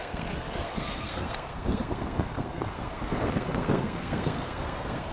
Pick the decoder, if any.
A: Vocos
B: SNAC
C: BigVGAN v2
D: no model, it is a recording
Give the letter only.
B